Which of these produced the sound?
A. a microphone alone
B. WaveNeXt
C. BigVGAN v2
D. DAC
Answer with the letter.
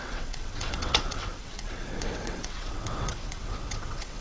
B